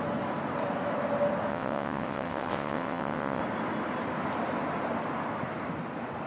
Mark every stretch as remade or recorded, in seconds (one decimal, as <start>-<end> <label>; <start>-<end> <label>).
0.0-1.5 recorded; 1.5-3.4 remade; 3.4-6.3 recorded